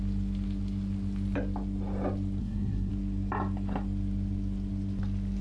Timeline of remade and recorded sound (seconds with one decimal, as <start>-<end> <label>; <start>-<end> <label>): 0.0-2.4 recorded; 2.4-2.9 remade; 2.9-5.4 recorded